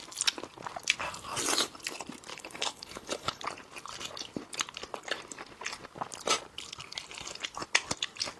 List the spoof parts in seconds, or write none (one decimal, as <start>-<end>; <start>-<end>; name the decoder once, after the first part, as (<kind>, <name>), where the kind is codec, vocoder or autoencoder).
2.3-3.4 (codec, HILCodec)